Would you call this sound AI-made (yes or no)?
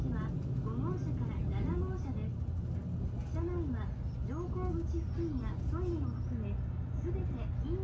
no